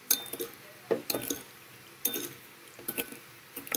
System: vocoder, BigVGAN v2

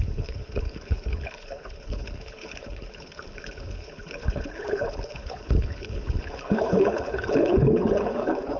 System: codec, HILCodec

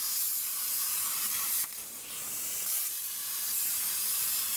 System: vocoder, BigVGAN v2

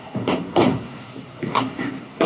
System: codec, SNAC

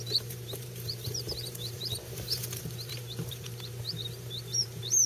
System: vocoder, BigVGAN v2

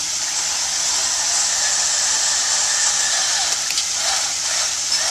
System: none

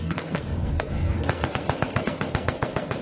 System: codec, SNAC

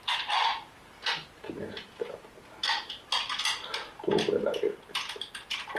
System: none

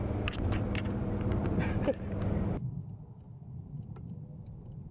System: none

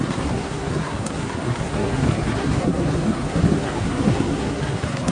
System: codec, SNAC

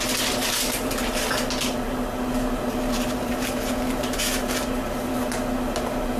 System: none